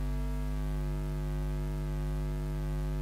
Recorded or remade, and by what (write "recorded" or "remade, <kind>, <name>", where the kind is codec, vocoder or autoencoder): recorded